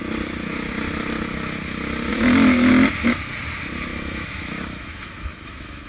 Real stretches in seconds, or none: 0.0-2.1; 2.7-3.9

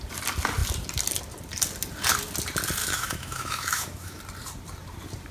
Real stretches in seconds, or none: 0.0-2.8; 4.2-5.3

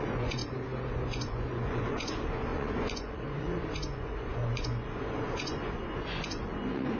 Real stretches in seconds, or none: 0.4-1.1